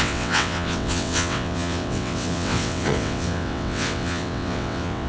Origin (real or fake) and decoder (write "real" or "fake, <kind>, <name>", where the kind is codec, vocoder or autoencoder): fake, vocoder, WaveNeXt